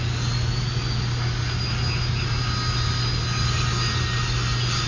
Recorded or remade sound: recorded